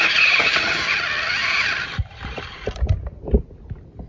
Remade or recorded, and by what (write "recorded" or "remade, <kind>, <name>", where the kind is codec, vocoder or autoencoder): recorded